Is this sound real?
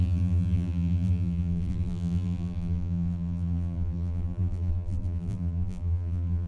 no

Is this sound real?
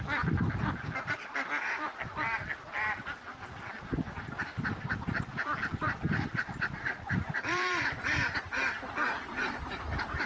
no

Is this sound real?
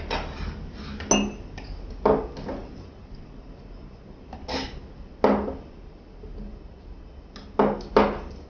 yes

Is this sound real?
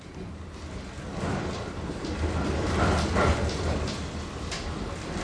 yes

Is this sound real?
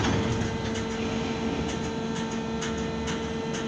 yes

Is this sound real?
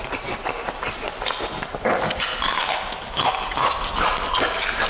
yes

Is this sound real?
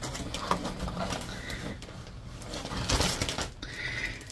yes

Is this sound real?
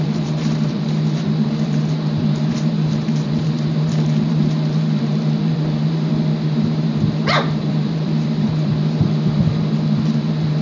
no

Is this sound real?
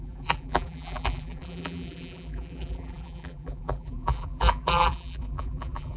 no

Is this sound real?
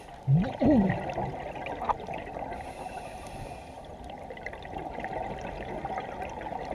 yes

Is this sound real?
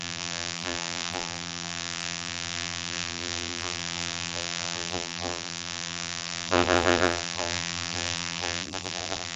no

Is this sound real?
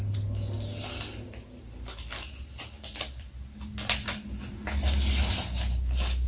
yes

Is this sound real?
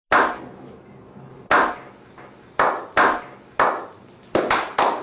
yes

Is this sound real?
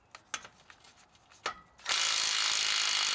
yes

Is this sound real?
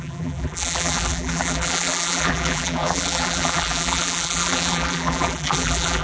no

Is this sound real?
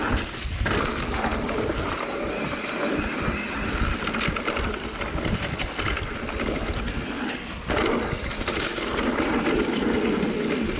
yes